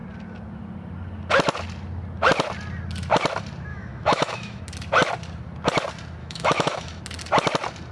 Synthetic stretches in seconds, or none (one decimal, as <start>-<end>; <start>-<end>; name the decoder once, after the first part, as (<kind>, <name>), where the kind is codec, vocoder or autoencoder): 3.7-4.6 (autoencoder, DAC-VAE); 6.2-7.0